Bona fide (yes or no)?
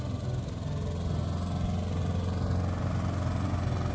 yes